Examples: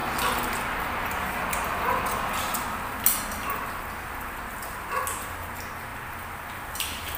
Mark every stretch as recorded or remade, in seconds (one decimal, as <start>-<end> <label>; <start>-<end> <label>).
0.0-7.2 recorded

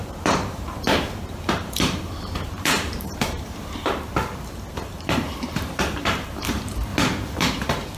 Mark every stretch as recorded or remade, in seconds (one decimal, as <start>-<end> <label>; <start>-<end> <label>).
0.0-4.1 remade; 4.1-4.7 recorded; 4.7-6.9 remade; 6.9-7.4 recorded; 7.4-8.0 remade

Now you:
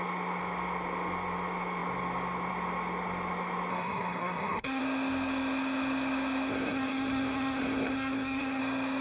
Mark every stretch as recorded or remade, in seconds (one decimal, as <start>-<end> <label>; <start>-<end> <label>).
0.0-3.7 recorded; 3.7-4.8 remade; 4.8-6.5 recorded; 6.5-8.6 remade; 8.6-9.0 recorded

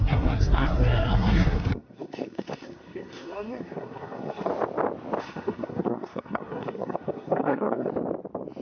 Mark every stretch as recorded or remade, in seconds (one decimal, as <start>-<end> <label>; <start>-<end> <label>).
0.0-4.5 remade; 4.5-5.2 recorded; 5.2-7.9 remade; 7.9-8.6 recorded

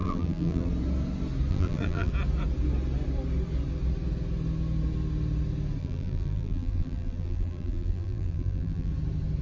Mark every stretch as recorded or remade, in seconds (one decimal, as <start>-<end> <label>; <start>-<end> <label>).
0.0-0.7 remade; 0.7-1.5 recorded; 1.5-2.1 remade; 2.1-5.8 recorded; 5.8-8.9 remade; 8.9-9.4 recorded